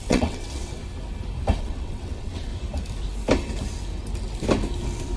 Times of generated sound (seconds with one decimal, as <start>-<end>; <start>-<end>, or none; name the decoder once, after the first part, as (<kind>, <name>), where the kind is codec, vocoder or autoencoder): 0.0-0.8 (vocoder, WaveNeXt); 1.6-2.5